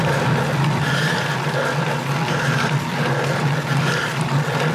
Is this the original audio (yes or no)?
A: yes